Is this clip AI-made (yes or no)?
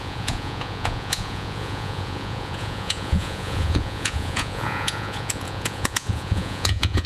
yes